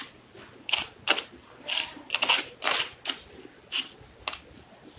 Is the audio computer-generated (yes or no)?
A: no